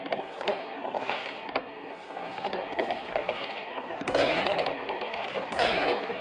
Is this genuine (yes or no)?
no